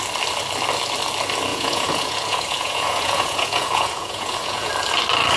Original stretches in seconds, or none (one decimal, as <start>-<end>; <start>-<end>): 0.0-1.5; 4.7-5.4